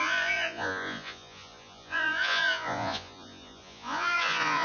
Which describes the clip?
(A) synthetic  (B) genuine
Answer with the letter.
A